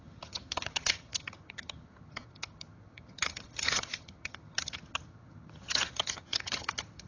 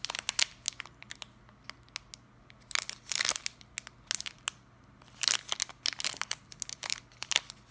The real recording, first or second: second